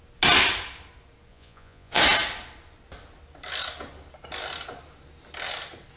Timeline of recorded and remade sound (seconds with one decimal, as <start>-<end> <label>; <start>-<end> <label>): 0.0-1.3 recorded; 1.3-2.0 remade; 2.0-6.0 recorded

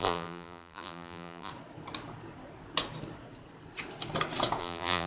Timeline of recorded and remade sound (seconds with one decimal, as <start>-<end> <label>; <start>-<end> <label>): 0.0-1.5 remade; 1.5-4.6 recorded; 4.6-5.1 remade

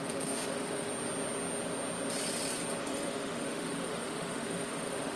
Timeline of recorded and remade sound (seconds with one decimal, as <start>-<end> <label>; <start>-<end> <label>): 0.0-0.9 remade; 0.9-2.8 recorded; 2.8-5.2 remade

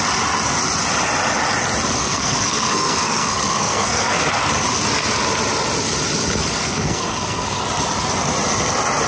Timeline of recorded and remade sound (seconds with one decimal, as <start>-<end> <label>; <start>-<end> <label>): 0.0-2.0 recorded; 2.0-4.2 remade; 4.2-6.4 recorded; 6.4-7.6 remade; 7.6-9.1 recorded